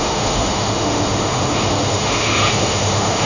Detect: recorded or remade remade